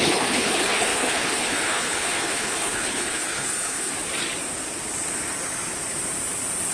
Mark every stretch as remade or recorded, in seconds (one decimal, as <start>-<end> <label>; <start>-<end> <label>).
0.0-3.9 remade; 3.9-6.7 recorded